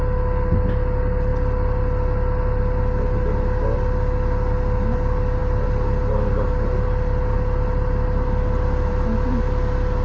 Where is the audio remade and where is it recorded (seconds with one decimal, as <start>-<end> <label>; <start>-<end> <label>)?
0.0-10.0 recorded